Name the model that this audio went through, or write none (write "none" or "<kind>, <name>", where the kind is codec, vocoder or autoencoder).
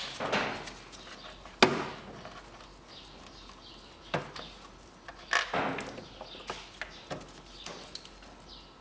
none